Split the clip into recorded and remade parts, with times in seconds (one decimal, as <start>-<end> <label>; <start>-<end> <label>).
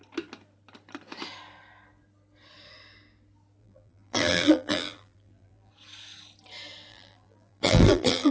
0.0-3.6 recorded; 3.6-5.7 remade; 5.7-6.9 recorded; 6.9-8.3 remade